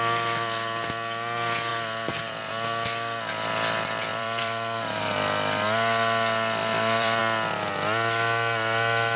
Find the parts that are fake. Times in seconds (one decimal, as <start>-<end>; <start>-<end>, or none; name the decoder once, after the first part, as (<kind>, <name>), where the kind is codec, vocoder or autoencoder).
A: 4.1-5.0 (vocoder, BigVGAN v2); 6.6-7.2